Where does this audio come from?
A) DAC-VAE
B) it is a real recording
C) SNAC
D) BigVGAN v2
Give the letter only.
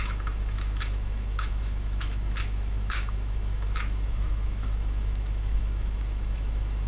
A